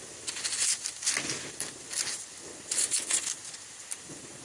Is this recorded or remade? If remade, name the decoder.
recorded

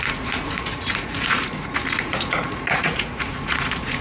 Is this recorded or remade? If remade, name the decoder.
remade, vocoder, Vocos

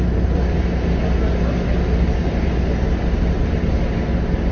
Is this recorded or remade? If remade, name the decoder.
recorded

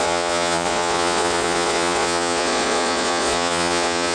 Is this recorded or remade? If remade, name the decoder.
remade, vocoder, Vocos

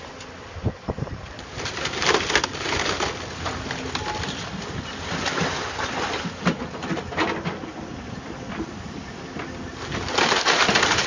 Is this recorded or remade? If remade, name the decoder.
recorded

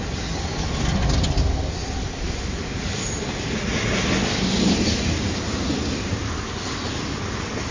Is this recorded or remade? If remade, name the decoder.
recorded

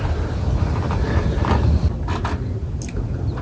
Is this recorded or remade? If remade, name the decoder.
recorded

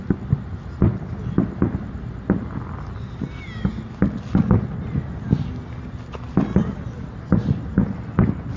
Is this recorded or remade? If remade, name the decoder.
recorded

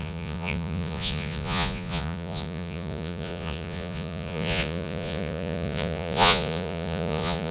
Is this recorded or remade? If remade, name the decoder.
remade, vocoder, Vocos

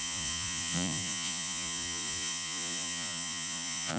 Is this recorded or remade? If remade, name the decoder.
remade, vocoder, Vocos